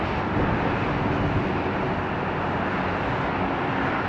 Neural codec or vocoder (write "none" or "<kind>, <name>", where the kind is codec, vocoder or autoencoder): none